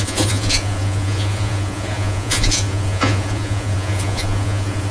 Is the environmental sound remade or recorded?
remade